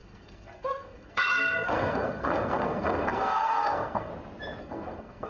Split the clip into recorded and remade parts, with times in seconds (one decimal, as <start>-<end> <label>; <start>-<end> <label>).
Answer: 0.0-4.1 remade; 4.1-4.6 recorded; 4.6-5.3 remade